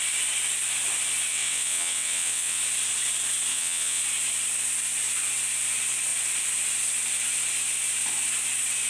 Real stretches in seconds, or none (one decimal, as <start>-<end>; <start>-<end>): 0.0-1.3; 2.6-3.5; 4.0-8.9